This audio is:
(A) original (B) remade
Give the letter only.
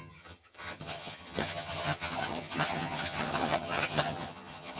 B